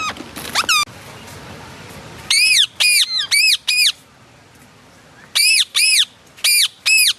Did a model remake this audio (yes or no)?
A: no